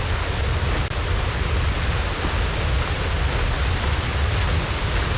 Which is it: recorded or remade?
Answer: recorded